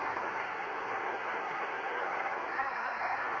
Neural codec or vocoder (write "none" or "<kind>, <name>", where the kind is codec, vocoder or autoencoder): codec, SNAC